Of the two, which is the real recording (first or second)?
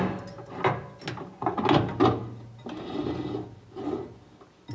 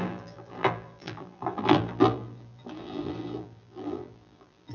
first